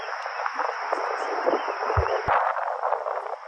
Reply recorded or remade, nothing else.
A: recorded